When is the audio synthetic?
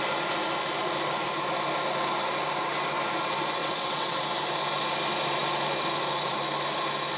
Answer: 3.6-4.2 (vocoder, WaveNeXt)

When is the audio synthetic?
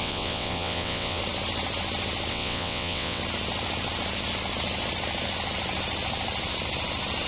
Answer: 0.0-1.2 (vocoder, WaveNeXt); 2.3-3.2